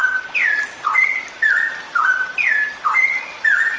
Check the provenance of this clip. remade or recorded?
recorded